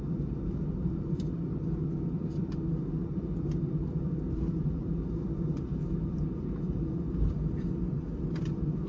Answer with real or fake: fake